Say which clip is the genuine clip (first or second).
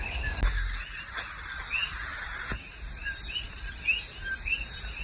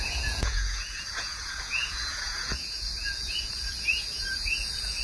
first